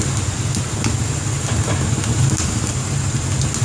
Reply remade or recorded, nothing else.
recorded